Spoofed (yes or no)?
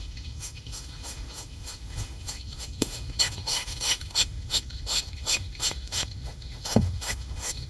yes